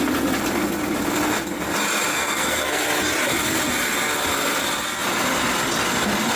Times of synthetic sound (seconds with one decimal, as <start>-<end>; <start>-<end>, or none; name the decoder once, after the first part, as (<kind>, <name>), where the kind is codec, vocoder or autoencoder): 2.1-2.8 (codec, SNAC)